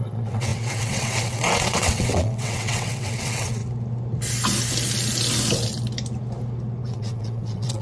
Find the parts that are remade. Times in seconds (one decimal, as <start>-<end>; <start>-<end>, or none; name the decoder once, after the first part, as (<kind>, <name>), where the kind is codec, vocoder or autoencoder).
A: 0.0-3.6 (vocoder, WaveNeXt); 6.9-7.8